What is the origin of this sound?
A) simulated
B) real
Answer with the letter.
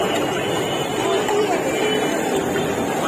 B